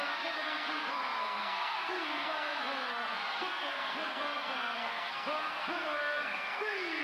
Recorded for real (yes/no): no